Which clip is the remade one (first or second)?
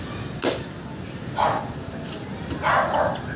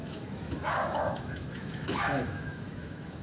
second